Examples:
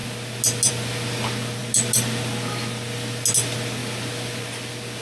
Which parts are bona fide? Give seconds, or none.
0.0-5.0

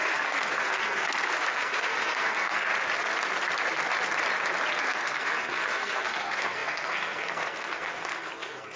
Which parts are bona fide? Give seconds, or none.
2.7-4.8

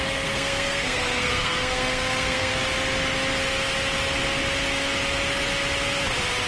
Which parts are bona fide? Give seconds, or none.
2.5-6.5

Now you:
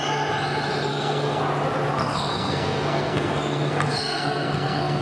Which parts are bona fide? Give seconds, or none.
0.0-0.9; 1.4-2.0